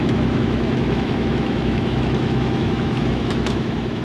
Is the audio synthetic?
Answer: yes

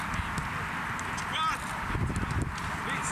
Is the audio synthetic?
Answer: no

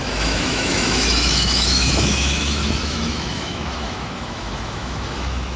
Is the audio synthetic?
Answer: yes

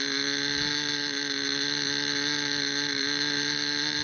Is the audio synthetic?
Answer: yes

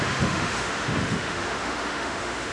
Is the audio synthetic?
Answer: yes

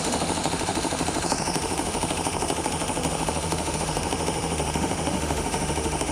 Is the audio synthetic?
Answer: yes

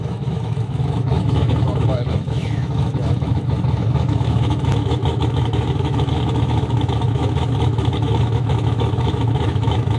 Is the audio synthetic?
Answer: yes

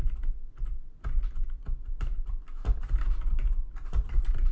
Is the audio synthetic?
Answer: no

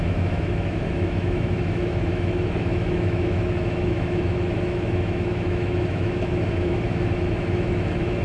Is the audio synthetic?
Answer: yes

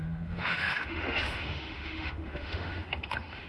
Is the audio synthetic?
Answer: yes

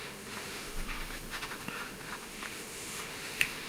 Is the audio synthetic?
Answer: yes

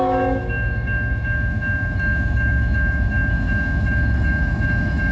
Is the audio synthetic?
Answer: yes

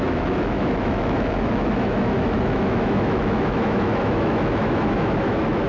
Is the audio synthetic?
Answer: yes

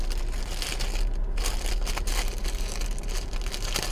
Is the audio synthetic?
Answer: no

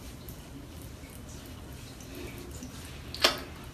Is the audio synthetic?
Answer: no